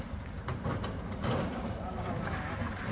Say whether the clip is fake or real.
real